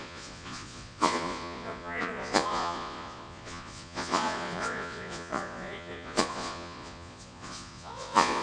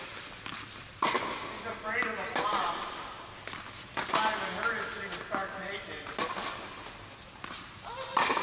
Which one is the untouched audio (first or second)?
second